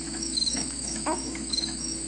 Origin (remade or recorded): remade